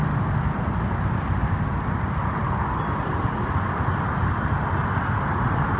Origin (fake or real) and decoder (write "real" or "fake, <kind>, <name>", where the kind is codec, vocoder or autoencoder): real